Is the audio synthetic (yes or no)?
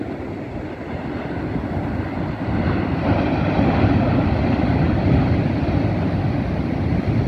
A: no